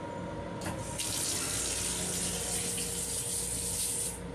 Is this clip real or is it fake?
real